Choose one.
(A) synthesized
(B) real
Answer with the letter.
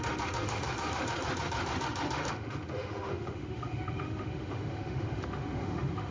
A